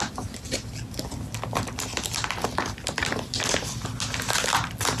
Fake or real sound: real